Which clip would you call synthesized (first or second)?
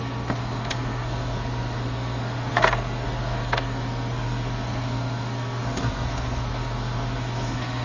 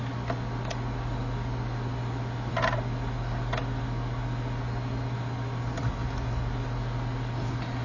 first